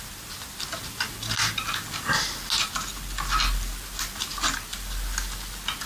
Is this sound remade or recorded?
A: recorded